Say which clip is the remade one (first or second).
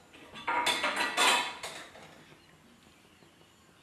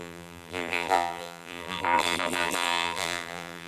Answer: second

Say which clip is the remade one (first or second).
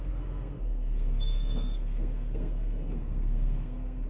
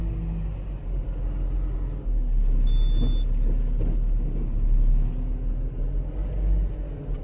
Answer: first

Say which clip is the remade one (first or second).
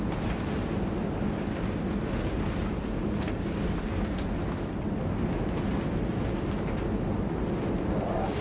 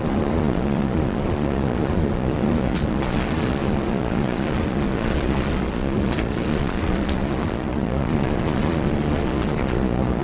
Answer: second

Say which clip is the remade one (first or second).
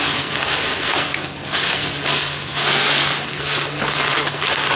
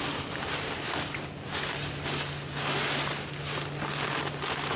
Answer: first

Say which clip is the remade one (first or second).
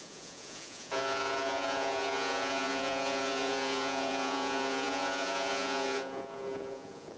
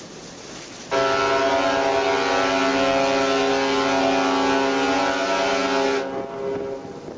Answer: first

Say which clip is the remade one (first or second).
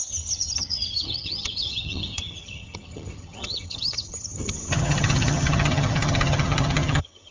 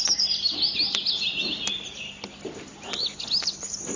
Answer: first